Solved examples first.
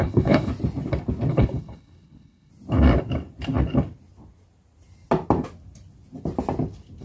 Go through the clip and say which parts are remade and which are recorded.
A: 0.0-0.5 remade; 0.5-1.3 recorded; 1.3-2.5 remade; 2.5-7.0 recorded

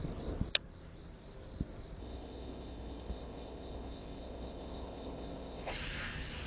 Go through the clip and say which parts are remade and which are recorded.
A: 0.0-2.0 recorded; 2.0-5.7 remade; 5.7-6.5 recorded

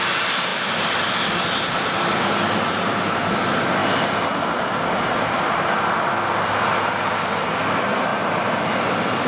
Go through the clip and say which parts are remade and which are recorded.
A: 0.0-9.3 recorded

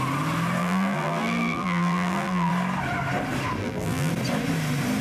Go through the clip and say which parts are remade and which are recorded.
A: 0.0-0.6 recorded; 0.6-2.5 remade; 2.5-3.6 recorded; 3.6-4.1 remade; 4.1-5.0 recorded

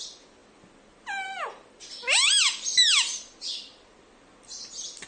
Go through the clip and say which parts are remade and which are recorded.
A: 0.0-5.1 recorded

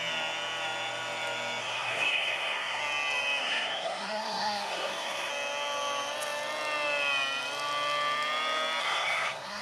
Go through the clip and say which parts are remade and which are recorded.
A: 0.0-1.6 recorded; 1.6-2.8 remade; 2.8-3.4 recorded; 3.4-5.3 remade; 5.3-8.8 recorded; 8.8-9.6 remade

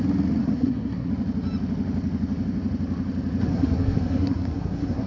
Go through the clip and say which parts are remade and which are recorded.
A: 0.0-0.4 recorded; 0.4-1.1 remade; 1.1-3.5 recorded; 3.5-5.1 remade